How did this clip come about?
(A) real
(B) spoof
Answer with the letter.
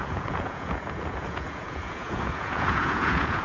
B